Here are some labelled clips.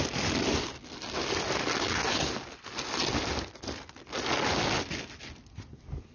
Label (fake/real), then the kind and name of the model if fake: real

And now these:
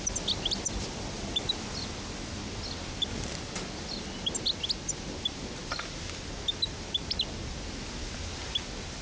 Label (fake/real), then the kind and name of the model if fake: real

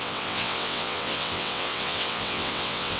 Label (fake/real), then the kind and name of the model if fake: fake, vocoder, WaveNeXt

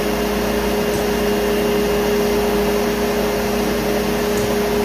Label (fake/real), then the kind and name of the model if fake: real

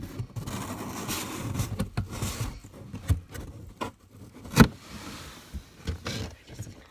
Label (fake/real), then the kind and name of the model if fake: real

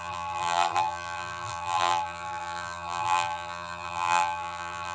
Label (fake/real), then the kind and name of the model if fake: fake, vocoder, BigVGAN v2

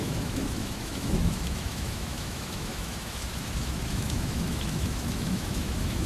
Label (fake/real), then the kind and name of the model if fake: fake, autoencoder, DAC-VAE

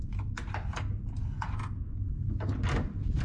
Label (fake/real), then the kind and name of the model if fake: real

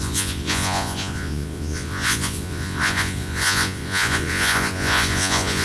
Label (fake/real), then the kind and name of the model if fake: fake, vocoder, Vocos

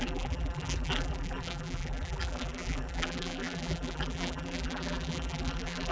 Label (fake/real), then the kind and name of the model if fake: fake, vocoder, BigVGAN v2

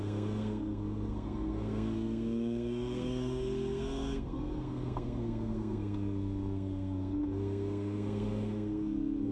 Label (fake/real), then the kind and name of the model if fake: fake, codec, SNAC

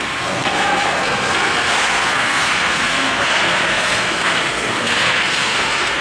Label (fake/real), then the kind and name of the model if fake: fake, codec, SNAC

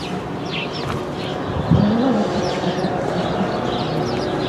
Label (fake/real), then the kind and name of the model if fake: real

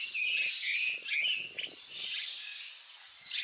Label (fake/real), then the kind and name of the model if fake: real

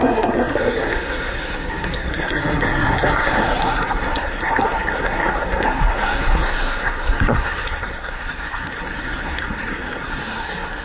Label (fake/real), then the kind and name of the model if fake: fake, codec, SNAC